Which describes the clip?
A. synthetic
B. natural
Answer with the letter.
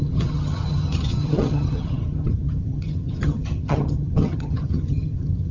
A